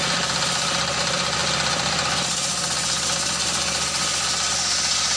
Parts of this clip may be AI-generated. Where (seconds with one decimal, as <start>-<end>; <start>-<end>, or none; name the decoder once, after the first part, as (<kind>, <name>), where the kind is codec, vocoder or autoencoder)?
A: none